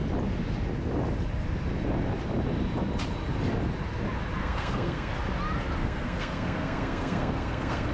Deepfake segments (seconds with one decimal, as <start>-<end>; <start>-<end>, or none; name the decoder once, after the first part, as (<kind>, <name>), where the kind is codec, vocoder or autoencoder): 4.4-5.1 (codec, SNAC); 5.8-7.9